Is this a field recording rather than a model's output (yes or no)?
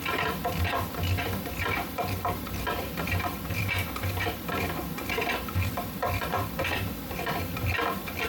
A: no